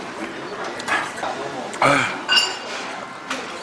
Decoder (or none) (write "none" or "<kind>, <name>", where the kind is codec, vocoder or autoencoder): none